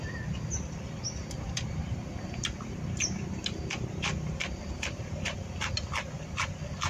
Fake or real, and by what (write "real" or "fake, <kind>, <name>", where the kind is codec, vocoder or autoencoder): real